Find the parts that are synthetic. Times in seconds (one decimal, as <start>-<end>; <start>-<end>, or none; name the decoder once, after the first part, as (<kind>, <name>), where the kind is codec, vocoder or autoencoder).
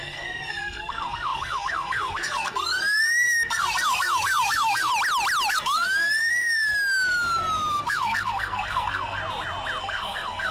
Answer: 0.0-4.9 (codec, SNAC); 5.5-6.7; 7.7-9.2; 9.8-10.5